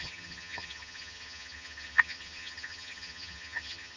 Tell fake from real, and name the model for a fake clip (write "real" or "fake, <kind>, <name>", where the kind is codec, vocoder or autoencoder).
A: fake, vocoder, HiFi-GAN